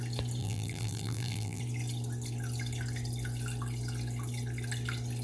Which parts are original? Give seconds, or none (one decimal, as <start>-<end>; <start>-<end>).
0.0-0.4; 1.6-5.2